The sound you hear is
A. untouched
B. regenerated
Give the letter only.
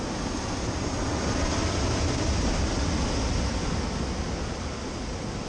A